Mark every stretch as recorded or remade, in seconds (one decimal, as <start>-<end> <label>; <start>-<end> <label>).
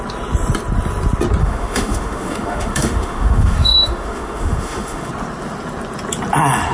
0.0-1.4 recorded; 1.4-5.1 remade; 5.1-6.7 recorded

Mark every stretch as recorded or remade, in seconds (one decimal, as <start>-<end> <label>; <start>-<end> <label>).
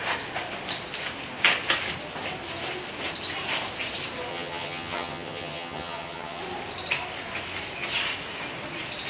0.0-4.3 recorded; 4.3-6.4 remade; 6.4-9.1 recorded